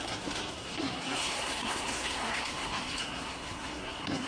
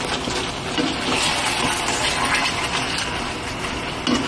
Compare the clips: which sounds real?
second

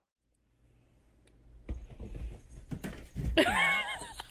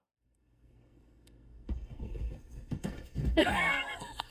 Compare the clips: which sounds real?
first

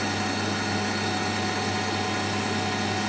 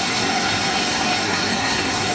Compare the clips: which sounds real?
first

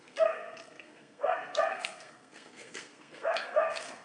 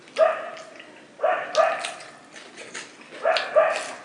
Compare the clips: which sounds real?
second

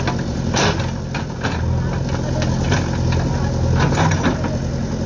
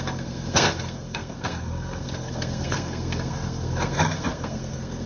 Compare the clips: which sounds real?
first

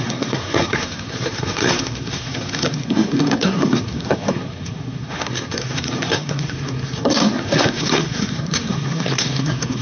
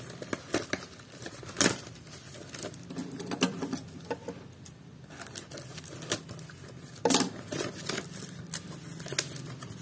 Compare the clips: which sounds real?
second